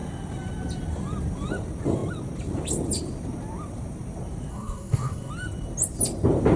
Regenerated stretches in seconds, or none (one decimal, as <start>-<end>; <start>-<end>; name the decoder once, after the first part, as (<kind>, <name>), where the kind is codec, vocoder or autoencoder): 4.5-5.3 (codec, SNAC)